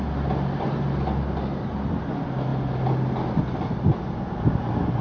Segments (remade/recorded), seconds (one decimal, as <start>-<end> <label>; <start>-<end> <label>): 0.0-5.0 recorded